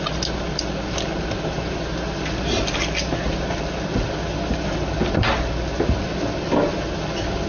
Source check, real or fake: real